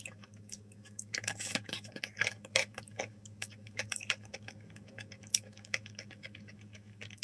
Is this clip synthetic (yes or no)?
yes